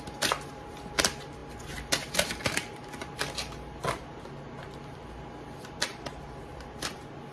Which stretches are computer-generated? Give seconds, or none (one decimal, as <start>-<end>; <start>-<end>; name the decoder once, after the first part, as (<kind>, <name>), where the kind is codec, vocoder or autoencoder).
none